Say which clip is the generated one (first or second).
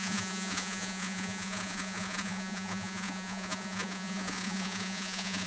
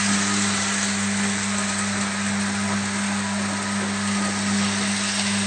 first